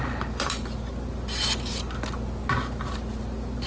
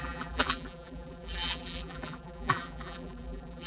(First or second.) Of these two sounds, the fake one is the second